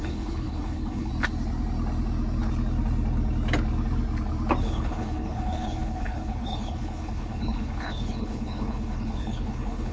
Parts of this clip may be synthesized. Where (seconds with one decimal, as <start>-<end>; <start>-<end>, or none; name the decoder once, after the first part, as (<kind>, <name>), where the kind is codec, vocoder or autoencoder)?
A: 0.0-1.1 (codec, HILCodec); 4.6-9.9